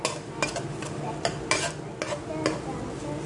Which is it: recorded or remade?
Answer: recorded